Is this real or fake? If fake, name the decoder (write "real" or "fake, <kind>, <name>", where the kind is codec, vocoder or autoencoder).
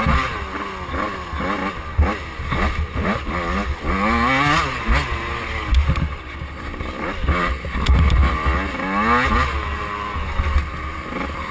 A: real